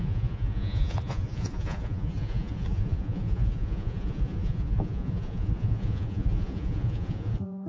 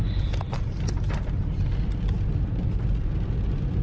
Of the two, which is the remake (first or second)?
first